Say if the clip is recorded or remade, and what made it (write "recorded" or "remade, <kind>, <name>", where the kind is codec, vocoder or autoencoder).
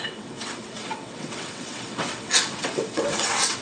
remade, vocoder, WaveNeXt